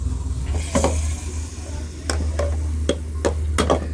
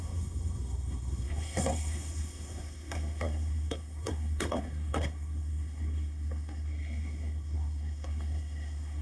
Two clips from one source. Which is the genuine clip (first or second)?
first